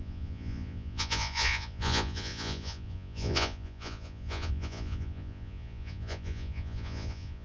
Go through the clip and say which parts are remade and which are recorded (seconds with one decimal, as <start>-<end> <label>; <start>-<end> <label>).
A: 0.0-7.4 remade